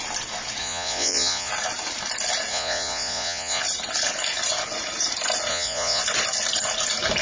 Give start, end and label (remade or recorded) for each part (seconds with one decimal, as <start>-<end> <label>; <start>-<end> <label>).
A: 0.0-0.6 recorded; 0.6-1.5 remade; 1.5-2.5 recorded; 2.5-3.6 remade; 3.6-5.5 recorded; 5.5-6.0 remade; 6.0-7.2 recorded